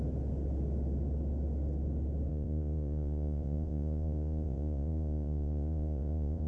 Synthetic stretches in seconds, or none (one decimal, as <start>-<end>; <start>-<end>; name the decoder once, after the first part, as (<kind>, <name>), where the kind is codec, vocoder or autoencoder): 2.3-6.5 (vocoder, Vocos)